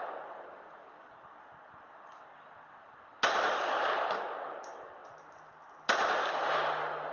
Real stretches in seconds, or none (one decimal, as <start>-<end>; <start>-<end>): 0.0-7.1

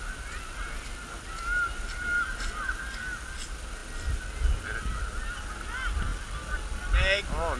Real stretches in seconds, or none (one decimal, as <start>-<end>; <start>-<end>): 0.0-7.6

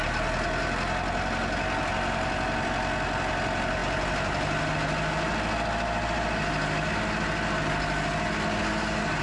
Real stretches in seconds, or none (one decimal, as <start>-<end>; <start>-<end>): 0.0-9.2

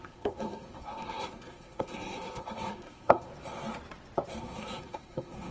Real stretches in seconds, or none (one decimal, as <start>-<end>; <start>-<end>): 3.3-4.4

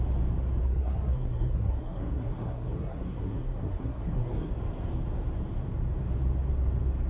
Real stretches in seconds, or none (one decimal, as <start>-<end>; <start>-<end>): 0.0-0.6; 4.5-7.1

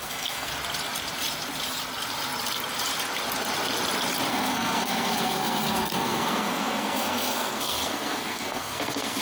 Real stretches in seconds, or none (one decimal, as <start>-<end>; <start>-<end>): 0.5-4.3